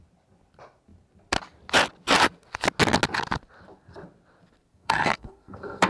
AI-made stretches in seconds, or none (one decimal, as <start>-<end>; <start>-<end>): 4.7-5.9